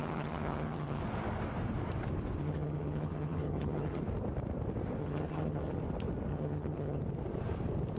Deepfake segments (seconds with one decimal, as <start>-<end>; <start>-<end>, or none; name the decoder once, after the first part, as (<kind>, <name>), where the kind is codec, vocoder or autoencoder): 0.0-1.0 (vocoder, HiFi-GAN); 2.4-4.0; 5.0-5.8; 6.3-7.0